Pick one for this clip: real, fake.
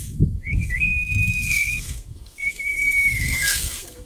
fake